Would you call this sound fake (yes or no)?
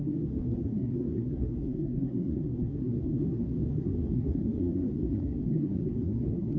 yes